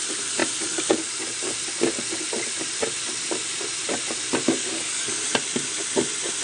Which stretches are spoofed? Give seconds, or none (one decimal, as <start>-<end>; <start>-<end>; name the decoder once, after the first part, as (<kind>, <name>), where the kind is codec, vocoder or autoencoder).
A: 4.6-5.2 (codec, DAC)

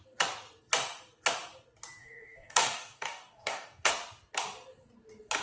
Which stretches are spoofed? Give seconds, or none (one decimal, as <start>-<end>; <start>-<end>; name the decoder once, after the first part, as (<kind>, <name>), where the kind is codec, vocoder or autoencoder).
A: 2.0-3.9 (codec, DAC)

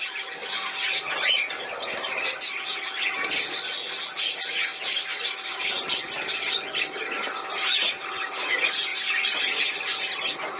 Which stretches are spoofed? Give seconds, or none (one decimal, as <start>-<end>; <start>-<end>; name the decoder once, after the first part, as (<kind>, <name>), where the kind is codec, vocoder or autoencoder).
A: none

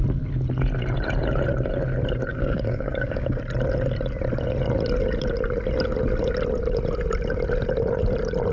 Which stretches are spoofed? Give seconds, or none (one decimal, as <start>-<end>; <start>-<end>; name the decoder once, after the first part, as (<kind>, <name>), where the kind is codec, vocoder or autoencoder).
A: 2.3-3.4 (codec, DAC)

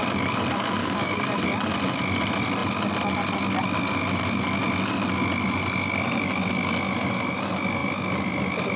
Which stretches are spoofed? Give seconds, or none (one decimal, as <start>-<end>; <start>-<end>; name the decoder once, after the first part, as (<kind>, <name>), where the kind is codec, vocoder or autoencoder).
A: 0.8-1.3 (codec, DAC)

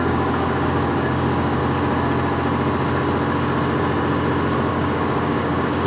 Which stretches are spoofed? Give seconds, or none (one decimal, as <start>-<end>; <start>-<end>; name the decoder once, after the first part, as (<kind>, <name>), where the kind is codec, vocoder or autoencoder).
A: 0.0-1.6 (codec, DAC); 4.7-5.9

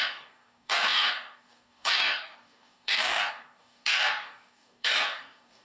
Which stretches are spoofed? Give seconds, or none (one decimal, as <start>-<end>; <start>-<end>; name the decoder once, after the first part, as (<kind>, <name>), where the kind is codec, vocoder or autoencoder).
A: 0.0-5.6 (codec, DAC)